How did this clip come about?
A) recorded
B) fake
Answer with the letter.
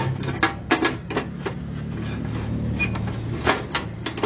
A